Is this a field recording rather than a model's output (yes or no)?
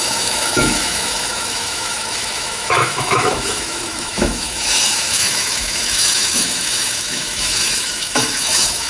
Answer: no